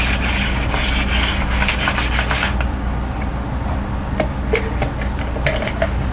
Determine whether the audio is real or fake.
real